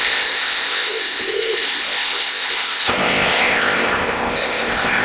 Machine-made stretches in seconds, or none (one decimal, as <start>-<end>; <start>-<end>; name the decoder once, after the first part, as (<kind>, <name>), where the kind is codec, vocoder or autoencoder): 0.0-5.0 (codec, ZipCodec)